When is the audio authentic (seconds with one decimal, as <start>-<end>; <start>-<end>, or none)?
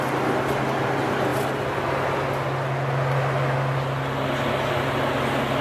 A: 0.0-5.6